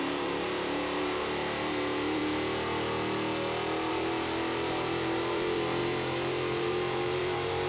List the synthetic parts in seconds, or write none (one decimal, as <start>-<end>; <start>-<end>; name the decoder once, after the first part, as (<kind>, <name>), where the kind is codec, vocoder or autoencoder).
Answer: 0.0-2.2 (vocoder, BigVGAN v2); 3.9-7.7